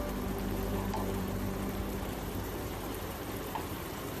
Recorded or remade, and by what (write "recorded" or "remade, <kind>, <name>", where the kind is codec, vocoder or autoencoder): remade, vocoder, BigVGAN v2